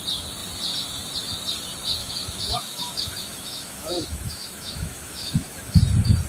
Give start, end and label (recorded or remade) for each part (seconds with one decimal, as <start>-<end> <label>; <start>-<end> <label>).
0.0-2.0 recorded; 2.0-5.8 remade; 5.8-6.3 recorded